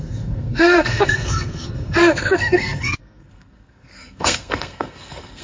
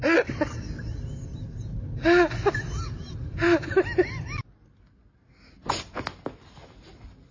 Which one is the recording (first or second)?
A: second